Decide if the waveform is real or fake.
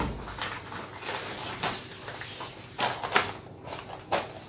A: real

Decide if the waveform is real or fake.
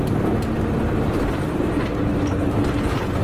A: real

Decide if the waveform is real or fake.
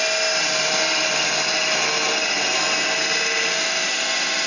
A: real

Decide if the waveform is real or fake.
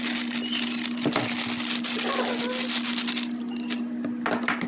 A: real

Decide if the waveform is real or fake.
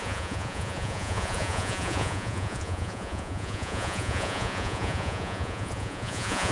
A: fake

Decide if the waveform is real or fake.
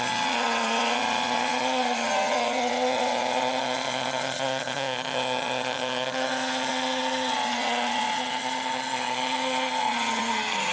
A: fake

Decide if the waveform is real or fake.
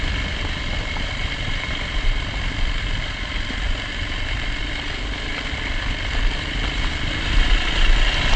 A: real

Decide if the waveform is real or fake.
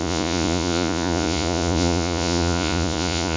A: fake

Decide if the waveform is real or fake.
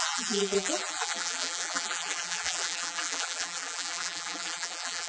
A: fake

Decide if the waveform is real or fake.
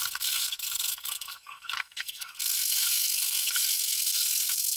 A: fake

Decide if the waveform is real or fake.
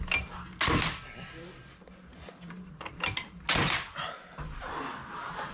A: real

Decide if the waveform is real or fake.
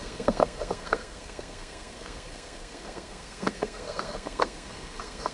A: fake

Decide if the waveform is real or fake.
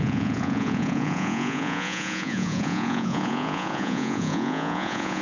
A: fake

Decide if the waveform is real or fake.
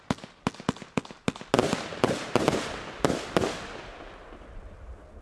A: real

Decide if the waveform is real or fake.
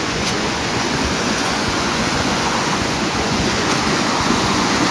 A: fake